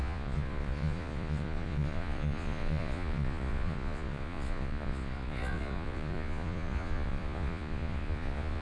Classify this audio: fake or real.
fake